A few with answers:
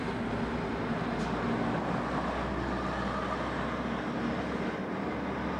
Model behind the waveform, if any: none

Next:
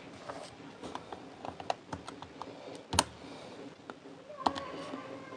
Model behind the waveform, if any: none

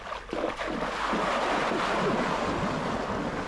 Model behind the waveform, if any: none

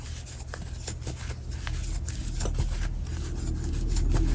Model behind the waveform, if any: none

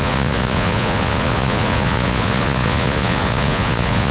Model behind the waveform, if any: vocoder, Vocos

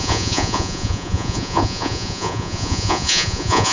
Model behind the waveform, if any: vocoder, Vocos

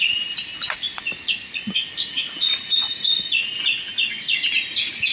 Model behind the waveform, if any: none